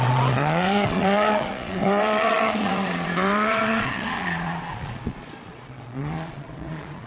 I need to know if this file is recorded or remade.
remade